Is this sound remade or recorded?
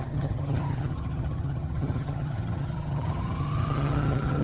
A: remade